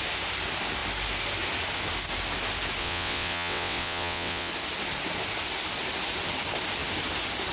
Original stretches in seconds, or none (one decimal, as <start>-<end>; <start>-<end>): 0.0-2.8; 4.5-7.5